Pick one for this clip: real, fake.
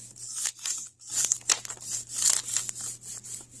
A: real